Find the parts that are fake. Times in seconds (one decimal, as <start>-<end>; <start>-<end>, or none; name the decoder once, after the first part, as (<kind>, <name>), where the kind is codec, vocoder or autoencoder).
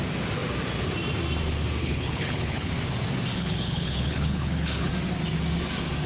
1.8-2.7 (codec, HILCodec); 3.3-4.9